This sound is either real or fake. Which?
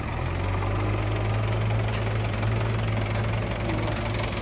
real